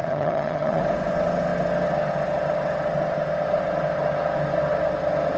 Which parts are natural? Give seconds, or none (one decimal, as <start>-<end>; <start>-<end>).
0.8-5.4